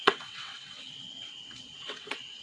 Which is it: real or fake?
fake